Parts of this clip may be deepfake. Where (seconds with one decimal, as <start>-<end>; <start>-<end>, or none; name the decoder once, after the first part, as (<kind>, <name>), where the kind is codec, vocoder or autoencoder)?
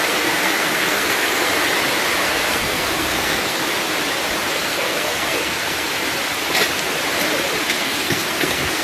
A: 0.0-1.5 (codec, SNAC); 2.2-3.6; 4.5-5.9; 7.7-8.8